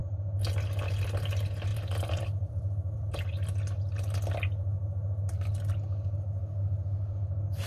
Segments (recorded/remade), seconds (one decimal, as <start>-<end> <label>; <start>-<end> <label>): 0.0-1.7 recorded; 1.7-3.1 remade; 3.1-7.7 recorded